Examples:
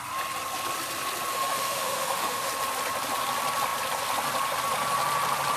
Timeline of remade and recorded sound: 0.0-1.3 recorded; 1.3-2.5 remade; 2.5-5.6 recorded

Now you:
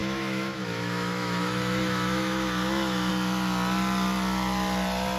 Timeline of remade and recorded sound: 0.0-3.1 remade; 3.1-5.2 recorded

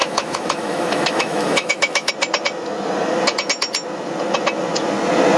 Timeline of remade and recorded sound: 0.0-2.1 remade; 2.1-5.4 recorded

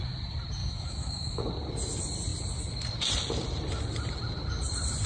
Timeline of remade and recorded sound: 0.0-0.6 recorded; 0.6-1.5 remade; 1.5-5.1 recorded